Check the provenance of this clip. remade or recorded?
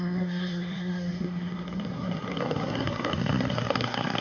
remade